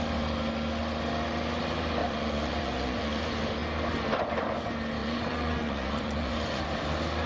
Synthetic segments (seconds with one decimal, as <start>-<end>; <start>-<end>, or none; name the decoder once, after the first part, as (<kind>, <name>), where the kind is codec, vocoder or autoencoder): 2.0-3.2 (vocoder, Vocos); 5.0-6.6